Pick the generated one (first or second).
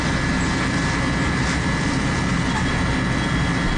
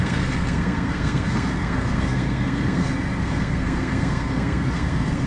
second